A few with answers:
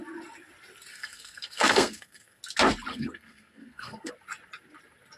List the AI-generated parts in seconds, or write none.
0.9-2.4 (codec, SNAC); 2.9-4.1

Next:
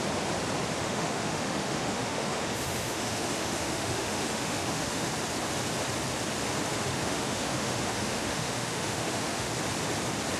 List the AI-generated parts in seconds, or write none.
0.8-5.1 (autoencoder, DAC-VAE); 6.7-9.5

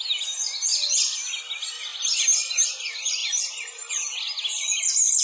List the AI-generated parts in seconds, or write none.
0.7-1.4 (vocoder, BigVGAN v2); 1.9-2.8; 3.2-3.9

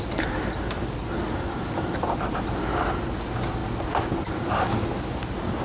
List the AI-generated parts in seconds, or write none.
0.0-1.0 (vocoder, BigVGAN v2); 2.2-3.6; 4.7-5.6

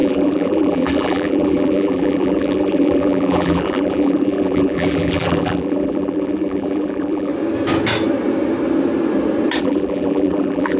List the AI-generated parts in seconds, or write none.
0.0-7.3 (vocoder, BigVGAN v2); 9.6-10.8